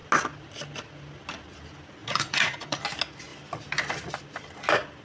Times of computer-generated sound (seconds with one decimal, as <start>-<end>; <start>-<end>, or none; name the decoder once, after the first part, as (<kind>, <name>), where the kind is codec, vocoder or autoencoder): 2.0-2.8 (vocoder, Vocos)